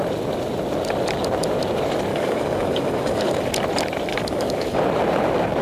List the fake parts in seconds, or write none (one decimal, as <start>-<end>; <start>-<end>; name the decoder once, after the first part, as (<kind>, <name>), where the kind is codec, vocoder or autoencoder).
2.1-3.5 (codec, DAC); 4.1-4.8